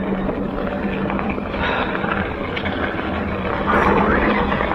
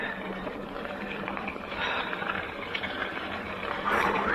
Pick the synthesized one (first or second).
second